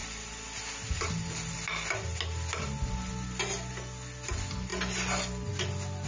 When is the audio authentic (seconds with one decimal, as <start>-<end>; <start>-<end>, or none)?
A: 0.0-6.1